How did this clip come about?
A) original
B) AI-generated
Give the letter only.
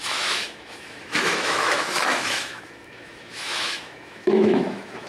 B